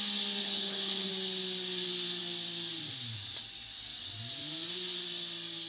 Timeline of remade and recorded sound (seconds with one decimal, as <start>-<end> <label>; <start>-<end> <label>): 0.0-0.4 recorded; 0.4-1.1 remade; 1.1-5.7 recorded